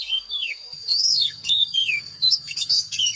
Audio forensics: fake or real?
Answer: fake